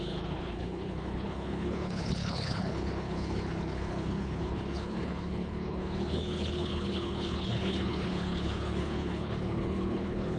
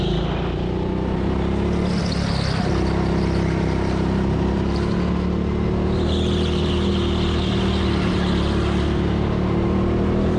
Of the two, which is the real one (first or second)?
second